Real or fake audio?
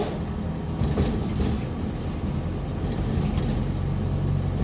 real